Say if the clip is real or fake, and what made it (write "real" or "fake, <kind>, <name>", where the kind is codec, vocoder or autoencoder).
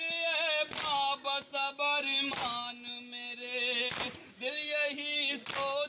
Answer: real